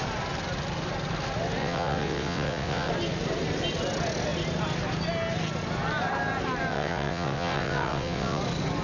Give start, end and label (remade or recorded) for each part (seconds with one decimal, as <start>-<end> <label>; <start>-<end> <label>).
0.0-1.6 recorded; 1.6-2.9 remade; 2.9-6.7 recorded; 6.7-8.4 remade; 8.4-8.8 recorded